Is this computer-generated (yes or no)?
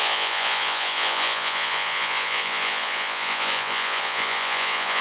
yes